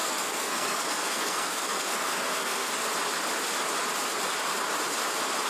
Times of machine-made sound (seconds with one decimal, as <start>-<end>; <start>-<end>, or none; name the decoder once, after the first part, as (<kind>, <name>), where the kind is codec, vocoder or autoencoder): 0.0-2.7 (codec, SNAC)